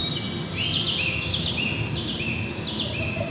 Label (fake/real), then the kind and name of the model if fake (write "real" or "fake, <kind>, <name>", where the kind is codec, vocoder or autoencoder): real